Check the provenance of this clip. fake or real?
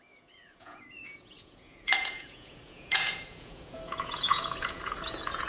fake